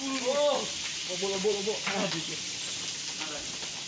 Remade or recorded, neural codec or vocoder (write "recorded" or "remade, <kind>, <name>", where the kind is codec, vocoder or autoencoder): recorded